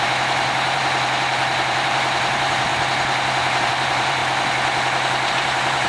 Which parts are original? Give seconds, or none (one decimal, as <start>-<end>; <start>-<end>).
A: 2.7-3.6; 4.2-5.3